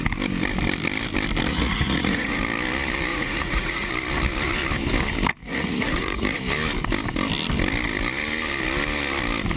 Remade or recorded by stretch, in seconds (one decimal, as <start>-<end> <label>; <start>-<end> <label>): 0.0-1.5 recorded; 1.5-2.4 remade; 2.4-3.1 recorded; 3.1-3.9 remade; 3.9-5.4 recorded; 5.4-6.4 remade; 6.4-9.6 recorded